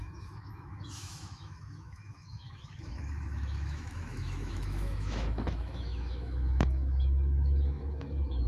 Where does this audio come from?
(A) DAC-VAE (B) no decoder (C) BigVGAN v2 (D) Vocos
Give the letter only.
A